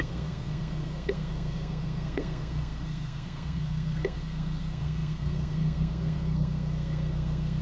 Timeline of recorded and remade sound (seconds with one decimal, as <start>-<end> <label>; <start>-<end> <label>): 0.0-7.6 remade